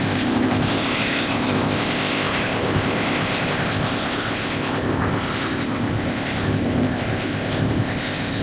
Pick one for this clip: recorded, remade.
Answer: remade